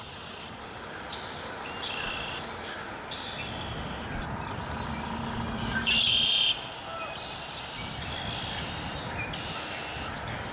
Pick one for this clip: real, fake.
real